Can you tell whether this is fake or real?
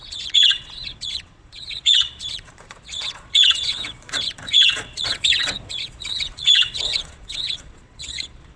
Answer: fake